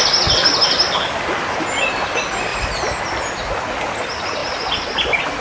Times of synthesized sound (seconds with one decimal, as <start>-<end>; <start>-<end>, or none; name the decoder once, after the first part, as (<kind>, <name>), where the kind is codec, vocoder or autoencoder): none